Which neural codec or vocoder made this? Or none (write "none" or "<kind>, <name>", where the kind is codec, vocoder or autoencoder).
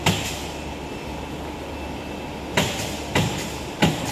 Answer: none